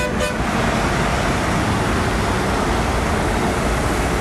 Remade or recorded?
recorded